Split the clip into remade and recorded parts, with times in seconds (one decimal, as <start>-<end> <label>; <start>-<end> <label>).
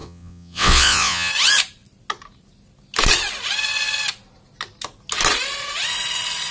0.0-1.3 remade; 1.3-6.5 recorded